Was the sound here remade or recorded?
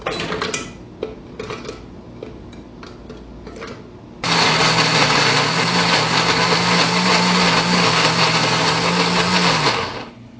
recorded